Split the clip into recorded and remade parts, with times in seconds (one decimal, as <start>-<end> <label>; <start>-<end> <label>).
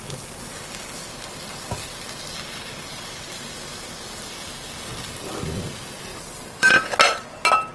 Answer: 0.0-6.1 recorded; 6.1-6.9 remade; 6.9-7.7 recorded